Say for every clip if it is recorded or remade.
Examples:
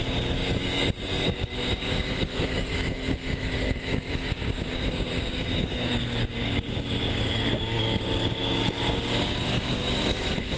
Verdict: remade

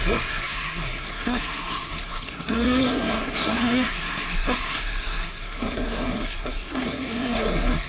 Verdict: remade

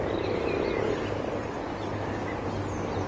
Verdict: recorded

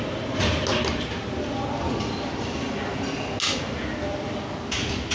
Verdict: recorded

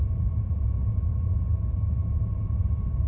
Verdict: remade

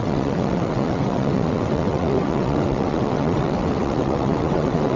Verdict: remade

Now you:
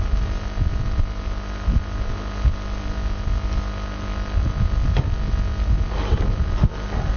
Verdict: recorded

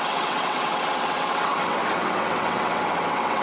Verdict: remade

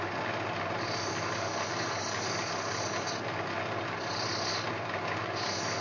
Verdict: recorded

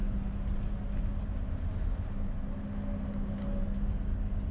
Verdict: recorded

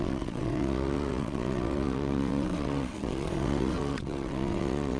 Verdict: remade